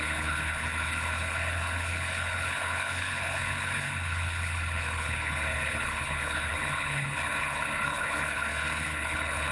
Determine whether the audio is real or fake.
fake